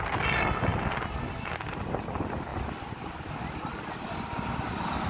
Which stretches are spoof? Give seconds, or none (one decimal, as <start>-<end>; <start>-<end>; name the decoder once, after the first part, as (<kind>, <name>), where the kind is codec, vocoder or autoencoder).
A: none